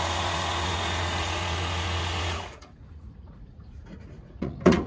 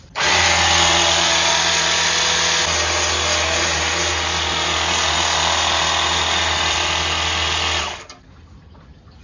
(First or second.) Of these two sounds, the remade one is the first